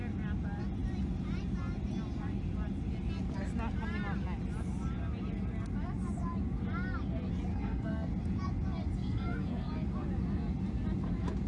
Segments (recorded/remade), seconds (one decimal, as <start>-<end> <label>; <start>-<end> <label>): 0.0-7.5 recorded; 7.5-8.1 remade; 8.1-9.0 recorded; 9.0-9.7 remade; 9.7-11.5 recorded